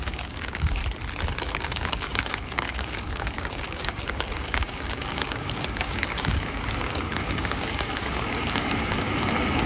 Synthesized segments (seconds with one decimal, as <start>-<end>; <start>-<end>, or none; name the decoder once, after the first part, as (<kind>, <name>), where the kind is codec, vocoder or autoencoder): 0.0-0.8 (codec, DAC); 1.4-9.7